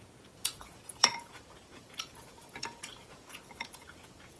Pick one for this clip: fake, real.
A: fake